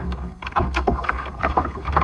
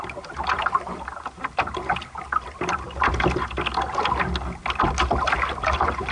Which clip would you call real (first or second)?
second